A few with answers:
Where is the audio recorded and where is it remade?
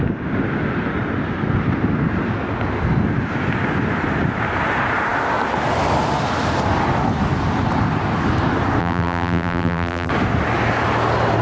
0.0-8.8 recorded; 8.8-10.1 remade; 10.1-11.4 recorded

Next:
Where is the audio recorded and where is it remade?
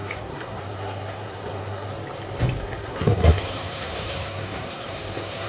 0.0-1.9 remade; 1.9-2.6 recorded; 2.6-5.5 remade